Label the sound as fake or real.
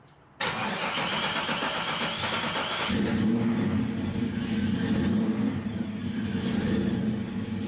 real